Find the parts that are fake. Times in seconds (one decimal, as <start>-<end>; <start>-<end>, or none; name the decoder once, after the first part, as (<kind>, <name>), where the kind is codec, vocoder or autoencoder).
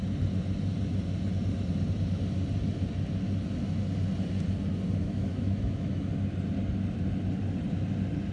5.0-6.1 (autoencoder, DAC-VAE)